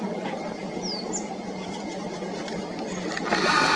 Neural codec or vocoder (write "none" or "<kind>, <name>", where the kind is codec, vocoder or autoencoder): none